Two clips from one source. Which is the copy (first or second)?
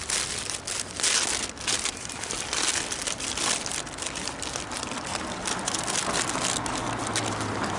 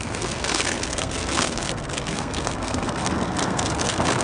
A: second